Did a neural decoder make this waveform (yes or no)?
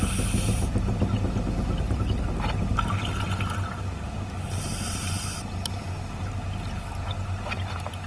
no